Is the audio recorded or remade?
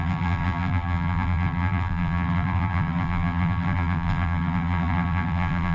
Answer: remade